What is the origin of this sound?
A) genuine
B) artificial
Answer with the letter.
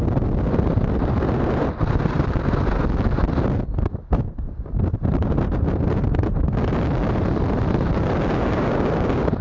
A